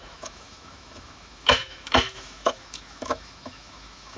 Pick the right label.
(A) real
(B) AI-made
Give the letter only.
B